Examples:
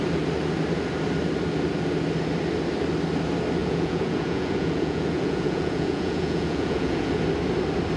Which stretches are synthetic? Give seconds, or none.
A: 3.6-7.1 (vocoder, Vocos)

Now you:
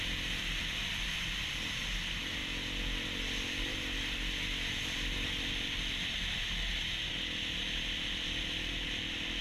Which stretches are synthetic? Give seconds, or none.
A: none

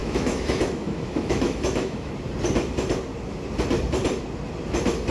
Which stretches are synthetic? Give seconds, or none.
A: 0.0-2.1 (autoencoder, DAC-VAE)

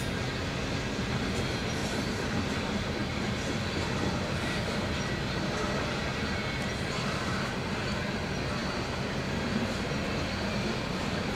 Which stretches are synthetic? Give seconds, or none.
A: 1.8-2.6 (vocoder, BigVGAN v2); 3.0-4.8; 8.6-9.8

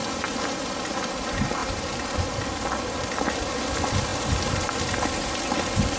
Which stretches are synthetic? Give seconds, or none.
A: none